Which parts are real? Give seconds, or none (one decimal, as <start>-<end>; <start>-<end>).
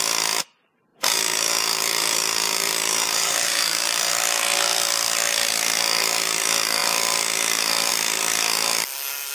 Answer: 0.0-0.9; 4.1-9.3